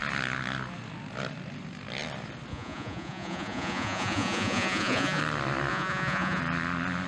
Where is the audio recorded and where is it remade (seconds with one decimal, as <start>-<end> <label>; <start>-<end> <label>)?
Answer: 0.0-2.5 recorded; 2.5-5.2 remade; 5.2-5.7 recorded; 5.7-6.4 remade; 6.4-7.1 recorded